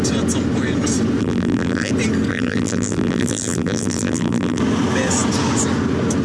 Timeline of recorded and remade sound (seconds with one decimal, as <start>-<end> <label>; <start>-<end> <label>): 0.0-1.2 recorded; 1.2-1.9 remade; 1.9-2.3 recorded; 2.3-4.6 remade; 4.6-6.2 recorded